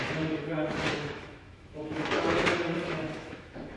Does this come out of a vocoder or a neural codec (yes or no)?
yes